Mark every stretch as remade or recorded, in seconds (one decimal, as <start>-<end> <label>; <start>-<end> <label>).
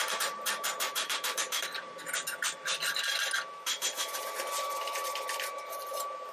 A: 0.0-1.9 remade; 1.9-5.5 recorded; 5.5-6.3 remade